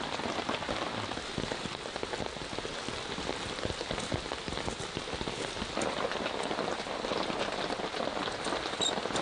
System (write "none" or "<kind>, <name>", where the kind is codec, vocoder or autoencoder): none